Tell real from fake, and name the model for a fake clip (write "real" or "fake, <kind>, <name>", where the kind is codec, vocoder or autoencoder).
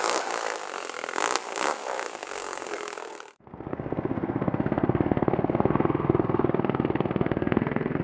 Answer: fake, codec, SNAC